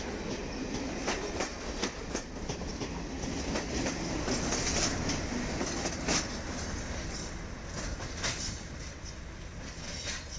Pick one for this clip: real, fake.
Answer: real